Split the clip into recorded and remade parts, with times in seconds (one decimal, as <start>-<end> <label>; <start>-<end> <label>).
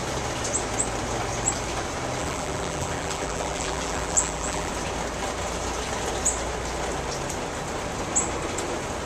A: 0.0-2.2 recorded; 2.2-4.7 remade; 4.7-9.1 recorded